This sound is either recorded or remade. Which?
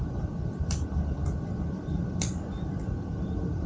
remade